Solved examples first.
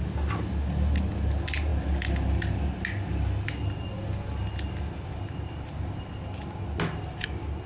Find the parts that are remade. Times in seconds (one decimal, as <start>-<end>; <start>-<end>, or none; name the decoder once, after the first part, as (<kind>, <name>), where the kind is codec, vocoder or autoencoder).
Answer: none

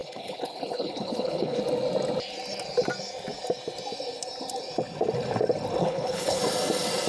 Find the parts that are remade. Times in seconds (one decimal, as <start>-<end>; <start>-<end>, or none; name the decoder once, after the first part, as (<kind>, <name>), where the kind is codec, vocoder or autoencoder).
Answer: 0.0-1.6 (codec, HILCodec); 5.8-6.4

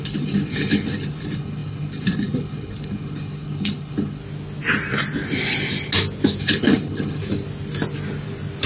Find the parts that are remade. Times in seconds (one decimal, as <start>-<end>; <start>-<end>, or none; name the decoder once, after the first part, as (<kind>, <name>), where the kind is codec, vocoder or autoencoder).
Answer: 0.0-4.2 (codec, HILCodec); 6.4-7.2

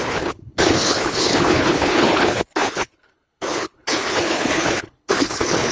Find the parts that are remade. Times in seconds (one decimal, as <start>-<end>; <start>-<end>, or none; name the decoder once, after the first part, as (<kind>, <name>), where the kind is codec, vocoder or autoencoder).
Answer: 0.0-5.7 (codec, HILCodec)